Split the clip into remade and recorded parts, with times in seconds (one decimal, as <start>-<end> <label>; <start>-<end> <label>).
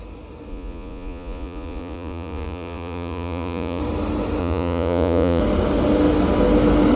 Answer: 0.0-0.5 recorded; 0.5-3.8 remade; 3.8-4.4 recorded; 4.4-5.4 remade; 5.4-7.0 recorded